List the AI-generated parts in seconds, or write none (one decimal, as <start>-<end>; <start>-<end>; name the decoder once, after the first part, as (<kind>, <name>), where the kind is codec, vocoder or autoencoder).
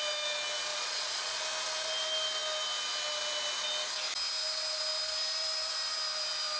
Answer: 0.7-1.4 (vocoder, Vocos)